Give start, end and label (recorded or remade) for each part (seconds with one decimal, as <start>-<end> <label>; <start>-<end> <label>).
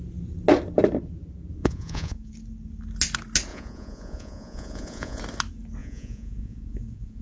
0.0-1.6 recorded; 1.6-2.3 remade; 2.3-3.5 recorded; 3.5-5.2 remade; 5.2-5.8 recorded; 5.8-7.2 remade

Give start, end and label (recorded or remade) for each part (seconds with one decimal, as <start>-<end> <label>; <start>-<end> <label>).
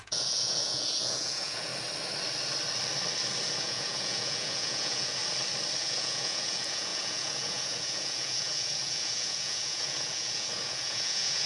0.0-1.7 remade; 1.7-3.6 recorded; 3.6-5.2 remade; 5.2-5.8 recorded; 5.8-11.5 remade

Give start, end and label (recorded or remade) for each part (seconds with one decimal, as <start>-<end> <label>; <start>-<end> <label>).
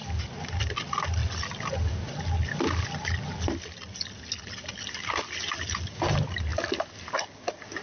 0.0-7.8 recorded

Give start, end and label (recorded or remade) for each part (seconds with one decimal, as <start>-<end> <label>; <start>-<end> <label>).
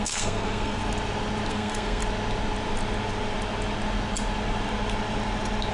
0.0-0.8 remade; 0.8-1.5 recorded; 1.5-2.0 remade; 2.0-5.7 recorded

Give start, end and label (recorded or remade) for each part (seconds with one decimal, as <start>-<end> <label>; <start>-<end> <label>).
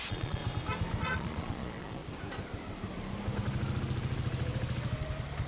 0.0-0.4 remade; 0.4-1.0 recorded; 1.0-2.0 remade; 2.0-5.5 recorded